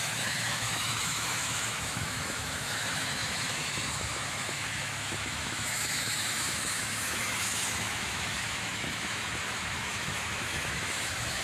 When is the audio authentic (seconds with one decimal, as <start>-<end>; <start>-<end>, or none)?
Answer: none